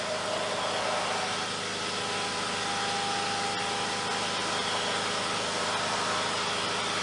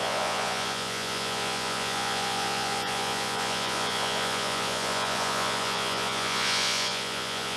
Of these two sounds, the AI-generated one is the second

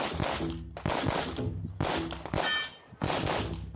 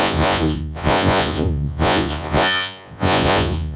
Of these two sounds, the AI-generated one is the second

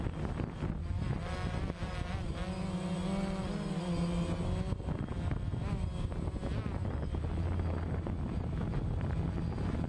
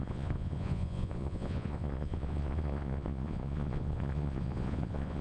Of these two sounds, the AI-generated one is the second